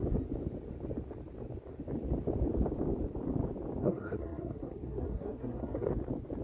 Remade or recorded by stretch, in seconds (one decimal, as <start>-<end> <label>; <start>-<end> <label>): 0.0-3.8 recorded; 3.8-5.9 remade; 5.9-6.4 recorded